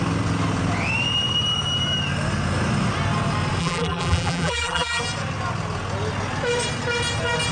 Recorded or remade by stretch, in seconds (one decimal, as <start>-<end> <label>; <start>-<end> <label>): 0.0-3.6 recorded; 3.6-5.0 remade; 5.0-7.5 recorded